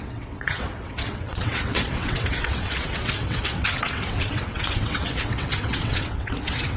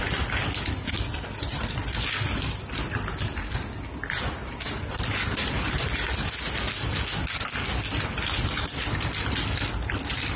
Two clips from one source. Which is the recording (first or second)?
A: second